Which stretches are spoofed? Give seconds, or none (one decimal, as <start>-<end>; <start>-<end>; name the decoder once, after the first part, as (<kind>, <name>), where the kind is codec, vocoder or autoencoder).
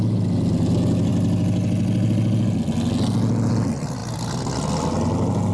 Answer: none